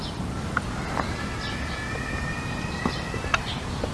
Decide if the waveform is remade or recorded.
recorded